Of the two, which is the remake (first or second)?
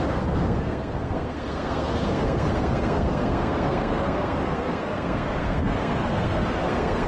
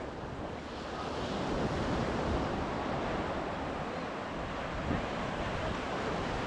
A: first